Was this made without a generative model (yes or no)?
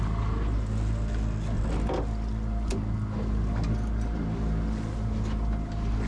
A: yes